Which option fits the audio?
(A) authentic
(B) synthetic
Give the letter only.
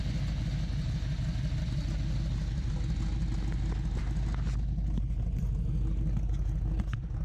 A